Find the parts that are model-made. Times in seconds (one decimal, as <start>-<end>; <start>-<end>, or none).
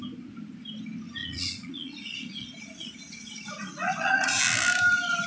1.2-4.4